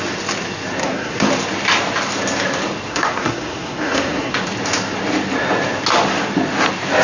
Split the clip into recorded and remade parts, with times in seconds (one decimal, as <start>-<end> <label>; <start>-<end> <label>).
0.0-0.8 recorded; 0.8-1.3 remade; 1.3-2.9 recorded; 2.9-4.3 remade; 4.3-7.0 recorded